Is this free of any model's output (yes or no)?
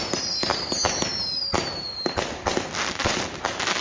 yes